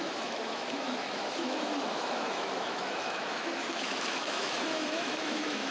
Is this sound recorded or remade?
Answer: remade